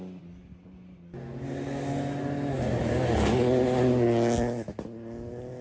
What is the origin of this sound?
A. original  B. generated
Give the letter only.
A